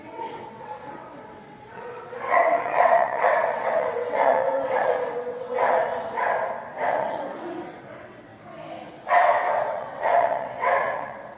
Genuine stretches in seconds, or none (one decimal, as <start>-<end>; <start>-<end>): 5.9-6.9; 8.3-8.9